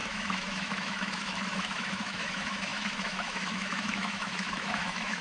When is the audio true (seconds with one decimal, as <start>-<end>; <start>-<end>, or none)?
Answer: none